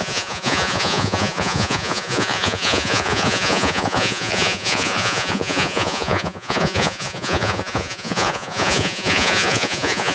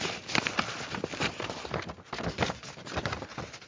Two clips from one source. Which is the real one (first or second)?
second